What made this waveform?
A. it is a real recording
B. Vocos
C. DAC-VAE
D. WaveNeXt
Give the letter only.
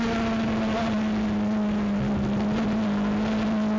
A